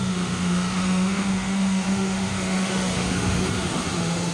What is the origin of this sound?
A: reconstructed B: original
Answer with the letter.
A